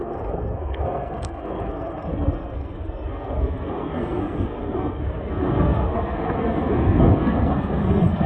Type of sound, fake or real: fake